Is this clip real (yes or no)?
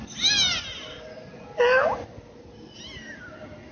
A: yes